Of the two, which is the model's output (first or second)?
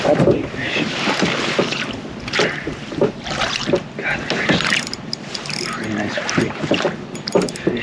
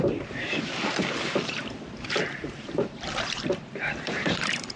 second